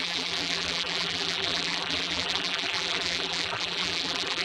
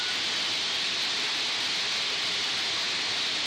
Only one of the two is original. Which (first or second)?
second